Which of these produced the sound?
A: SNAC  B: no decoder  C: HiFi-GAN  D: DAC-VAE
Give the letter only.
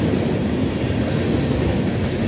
B